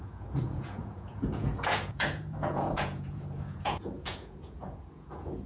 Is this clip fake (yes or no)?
yes